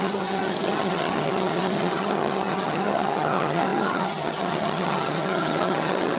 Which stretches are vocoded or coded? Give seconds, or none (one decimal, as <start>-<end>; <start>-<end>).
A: 0.0-6.2